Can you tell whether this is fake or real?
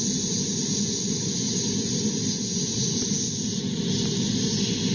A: real